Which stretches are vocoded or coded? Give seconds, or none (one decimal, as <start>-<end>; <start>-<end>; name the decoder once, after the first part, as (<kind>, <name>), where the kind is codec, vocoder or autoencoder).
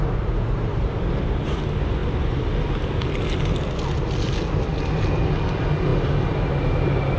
none